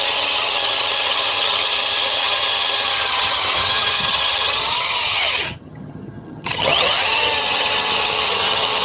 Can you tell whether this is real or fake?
fake